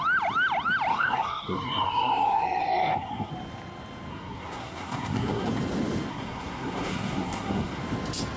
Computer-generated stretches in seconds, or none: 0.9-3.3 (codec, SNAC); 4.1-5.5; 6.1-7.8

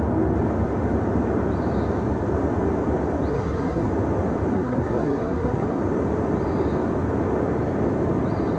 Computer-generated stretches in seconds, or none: 3.3-3.9 (codec, SNAC); 4.5-5.8

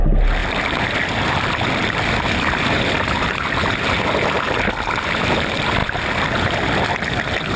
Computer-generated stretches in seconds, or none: none

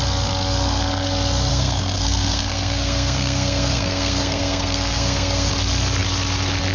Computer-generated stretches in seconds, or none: 1.5-5.5 (codec, SNAC)